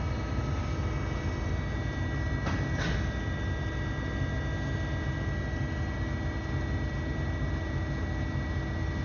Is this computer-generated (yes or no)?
no